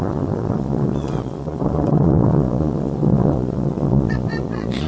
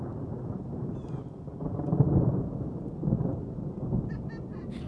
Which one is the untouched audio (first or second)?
second